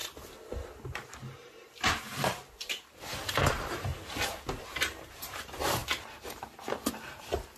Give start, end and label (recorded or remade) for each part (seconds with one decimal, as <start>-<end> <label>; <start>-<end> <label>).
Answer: 0.0-2.7 recorded; 2.7-3.9 remade; 3.9-4.6 recorded; 4.6-5.8 remade; 5.8-6.9 recorded; 6.9-7.6 remade